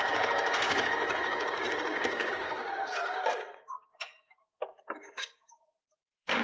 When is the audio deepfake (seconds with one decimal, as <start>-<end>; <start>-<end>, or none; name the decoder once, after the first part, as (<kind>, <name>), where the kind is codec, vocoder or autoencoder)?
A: 0.0-6.4 (codec, DAC)